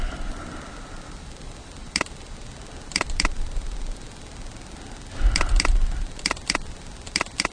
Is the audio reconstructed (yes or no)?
no